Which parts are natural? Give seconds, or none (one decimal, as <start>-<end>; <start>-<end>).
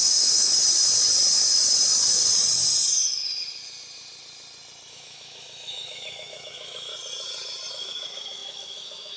0.5-4.9; 6.9-7.7